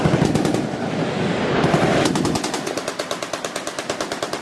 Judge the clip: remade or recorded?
remade